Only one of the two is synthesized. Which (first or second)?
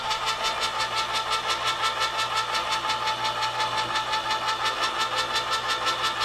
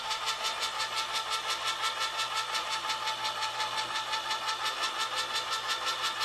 second